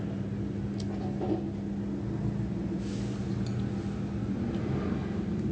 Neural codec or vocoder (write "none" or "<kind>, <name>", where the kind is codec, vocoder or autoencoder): none